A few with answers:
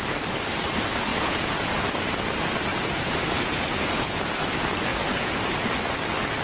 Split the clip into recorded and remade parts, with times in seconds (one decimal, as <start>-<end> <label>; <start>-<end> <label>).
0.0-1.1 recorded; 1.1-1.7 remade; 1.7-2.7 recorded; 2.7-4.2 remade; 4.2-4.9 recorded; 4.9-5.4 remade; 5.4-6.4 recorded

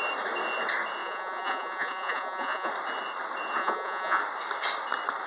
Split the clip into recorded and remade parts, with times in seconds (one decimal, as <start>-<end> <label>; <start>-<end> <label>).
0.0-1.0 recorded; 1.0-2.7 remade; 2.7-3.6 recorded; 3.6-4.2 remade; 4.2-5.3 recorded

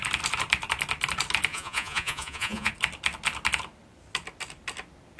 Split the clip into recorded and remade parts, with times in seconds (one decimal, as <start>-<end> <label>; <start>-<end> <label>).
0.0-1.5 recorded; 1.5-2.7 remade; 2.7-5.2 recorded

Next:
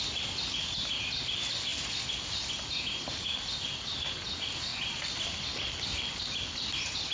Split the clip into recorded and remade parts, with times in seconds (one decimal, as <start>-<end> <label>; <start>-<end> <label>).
0.0-7.1 recorded